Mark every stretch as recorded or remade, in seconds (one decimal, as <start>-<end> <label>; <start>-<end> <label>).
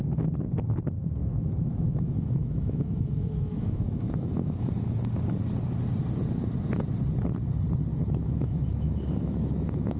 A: 0.0-1.2 recorded; 1.2-4.7 remade; 4.7-7.9 recorded; 7.9-10.0 remade